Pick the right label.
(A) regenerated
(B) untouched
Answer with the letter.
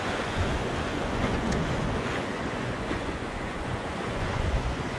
A